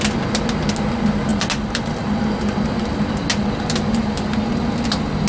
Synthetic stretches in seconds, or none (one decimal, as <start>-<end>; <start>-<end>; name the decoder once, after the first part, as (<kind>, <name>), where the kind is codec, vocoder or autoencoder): none